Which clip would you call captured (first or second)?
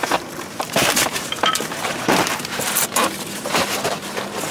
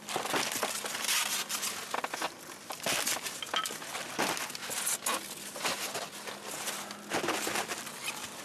second